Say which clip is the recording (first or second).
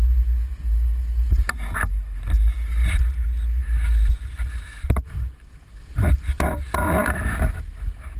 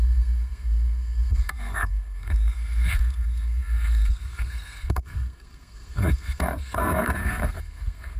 first